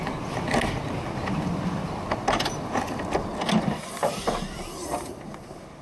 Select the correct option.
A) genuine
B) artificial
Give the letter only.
A